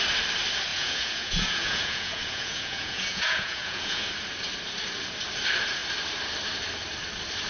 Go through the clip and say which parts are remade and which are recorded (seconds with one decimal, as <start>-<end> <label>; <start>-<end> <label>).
0.0-0.7 recorded; 0.7-4.1 remade; 4.1-7.5 recorded